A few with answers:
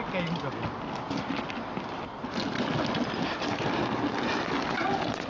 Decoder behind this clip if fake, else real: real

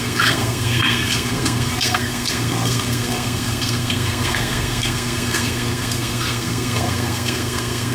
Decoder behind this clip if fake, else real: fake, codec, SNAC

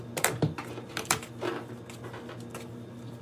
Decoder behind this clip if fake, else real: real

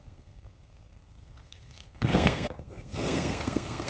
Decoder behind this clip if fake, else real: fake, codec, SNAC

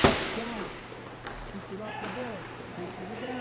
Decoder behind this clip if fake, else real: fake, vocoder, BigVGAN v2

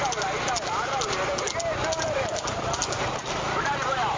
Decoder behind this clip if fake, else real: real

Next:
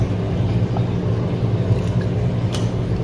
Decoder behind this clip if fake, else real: real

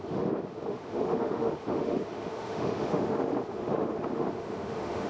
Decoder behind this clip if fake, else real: fake, autoencoder, DAC-VAE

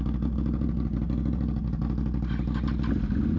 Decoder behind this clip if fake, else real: real